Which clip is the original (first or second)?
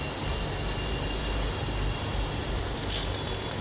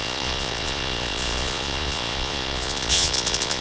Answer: first